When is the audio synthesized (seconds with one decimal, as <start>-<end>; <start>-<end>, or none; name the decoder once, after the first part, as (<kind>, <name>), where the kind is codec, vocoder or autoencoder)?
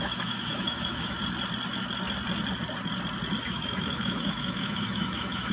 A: 0.0-1.2 (autoencoder, DAC-VAE); 3.4-5.5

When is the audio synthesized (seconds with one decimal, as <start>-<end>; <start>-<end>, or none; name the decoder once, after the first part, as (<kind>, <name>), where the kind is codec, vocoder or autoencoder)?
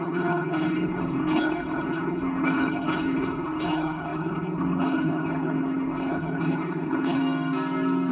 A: 0.0-7.2 (codec, HILCodec)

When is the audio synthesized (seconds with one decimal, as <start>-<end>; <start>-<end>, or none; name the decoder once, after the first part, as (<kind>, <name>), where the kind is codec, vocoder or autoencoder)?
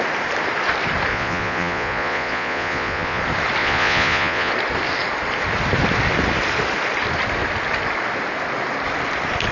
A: 1.1-3.2 (vocoder, Vocos); 3.6-4.5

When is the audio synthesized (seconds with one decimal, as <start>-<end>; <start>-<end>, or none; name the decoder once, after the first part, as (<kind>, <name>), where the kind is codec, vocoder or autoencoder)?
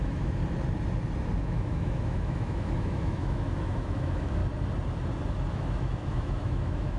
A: 0.0-0.4 (autoencoder, DAC-VAE); 1.4-4.4; 5.5-7.0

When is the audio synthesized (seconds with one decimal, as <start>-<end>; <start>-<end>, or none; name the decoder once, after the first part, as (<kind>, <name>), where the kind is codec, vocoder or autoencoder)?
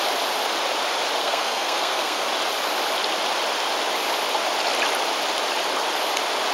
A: 1.2-2.3 (codec, SNAC)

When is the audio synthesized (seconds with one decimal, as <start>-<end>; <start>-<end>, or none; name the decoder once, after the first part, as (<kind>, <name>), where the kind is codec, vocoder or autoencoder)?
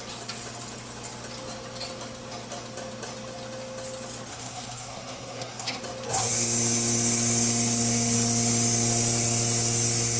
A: 4.3-5.8 (codec, SNAC)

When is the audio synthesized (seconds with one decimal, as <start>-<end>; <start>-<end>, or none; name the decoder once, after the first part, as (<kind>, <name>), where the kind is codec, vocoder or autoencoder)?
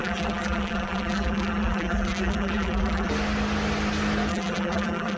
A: 0.0-3.1 (vocoder, BigVGAN v2); 4.3-5.2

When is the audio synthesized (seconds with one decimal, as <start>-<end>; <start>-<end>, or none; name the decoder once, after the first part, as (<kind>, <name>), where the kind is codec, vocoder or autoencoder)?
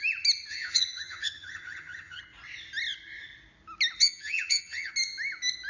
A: 0.5-2.2 (vocoder, HiFi-GAN); 4.0-4.9